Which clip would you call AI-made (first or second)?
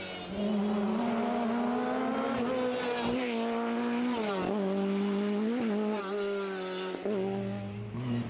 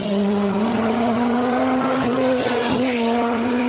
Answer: second